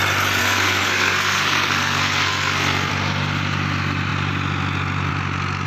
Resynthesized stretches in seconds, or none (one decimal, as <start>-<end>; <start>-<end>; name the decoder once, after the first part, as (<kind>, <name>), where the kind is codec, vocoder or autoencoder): 0.4-2.9 (codec, SNAC)